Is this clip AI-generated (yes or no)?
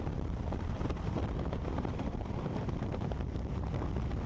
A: yes